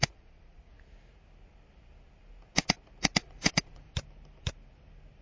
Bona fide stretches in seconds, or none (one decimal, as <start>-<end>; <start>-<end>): 0.7-3.2; 3.9-5.2